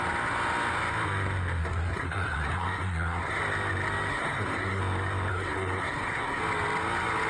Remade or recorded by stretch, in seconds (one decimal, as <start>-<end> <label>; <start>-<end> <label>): 0.0-1.6 recorded; 1.6-3.4 remade; 3.4-4.1 recorded; 4.1-4.8 remade; 4.8-5.3 recorded; 5.3-6.4 remade; 6.4-7.3 recorded